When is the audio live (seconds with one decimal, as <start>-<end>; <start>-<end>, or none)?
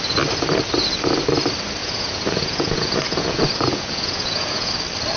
0.0-1.8; 4.7-5.2